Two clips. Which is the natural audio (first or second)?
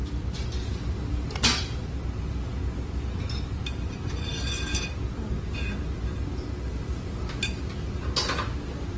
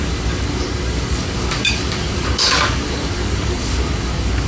first